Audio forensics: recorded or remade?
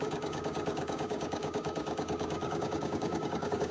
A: remade